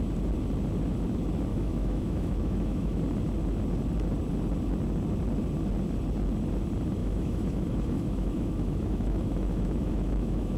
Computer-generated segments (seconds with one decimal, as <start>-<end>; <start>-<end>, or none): 1.5-3.0; 7.0-10.6